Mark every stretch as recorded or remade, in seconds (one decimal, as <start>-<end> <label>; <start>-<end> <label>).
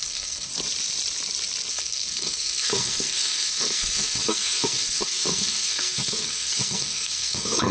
0.0-0.5 remade; 0.5-1.7 recorded; 1.7-7.7 remade